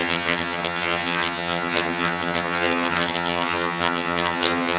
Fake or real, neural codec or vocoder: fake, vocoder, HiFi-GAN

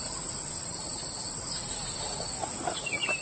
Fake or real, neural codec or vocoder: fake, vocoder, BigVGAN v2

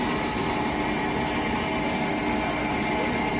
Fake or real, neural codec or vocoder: real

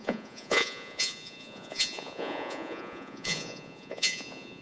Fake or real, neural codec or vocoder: fake, vocoder, Vocos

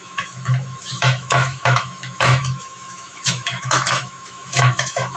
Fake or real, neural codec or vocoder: fake, autoencoder, DAC-VAE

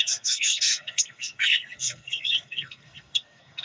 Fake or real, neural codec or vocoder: fake, codec, SNAC